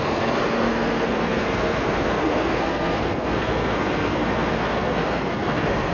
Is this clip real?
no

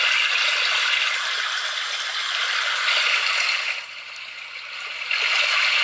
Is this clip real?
yes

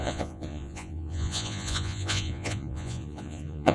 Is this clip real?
no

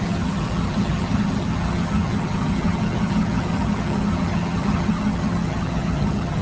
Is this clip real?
no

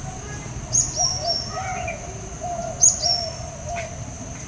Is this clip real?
yes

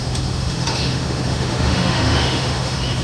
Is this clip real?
no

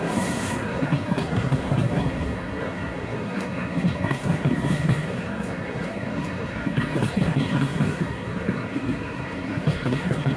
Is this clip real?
no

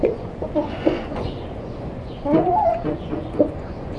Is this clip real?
no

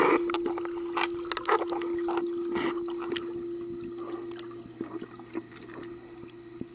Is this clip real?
yes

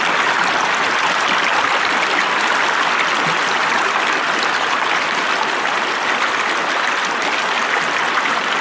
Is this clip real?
yes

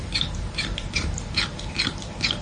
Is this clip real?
no